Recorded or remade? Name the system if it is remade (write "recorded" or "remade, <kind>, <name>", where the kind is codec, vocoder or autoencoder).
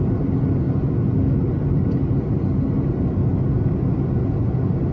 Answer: recorded